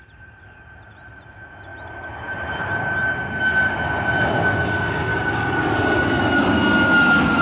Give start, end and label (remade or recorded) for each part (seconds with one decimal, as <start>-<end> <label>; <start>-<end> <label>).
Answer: 0.0-5.1 recorded; 5.1-6.2 remade; 6.2-7.4 recorded